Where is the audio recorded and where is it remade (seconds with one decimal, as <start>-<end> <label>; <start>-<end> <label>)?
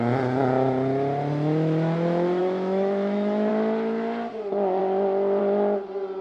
0.0-2.4 recorded; 2.4-3.5 remade; 3.5-6.2 recorded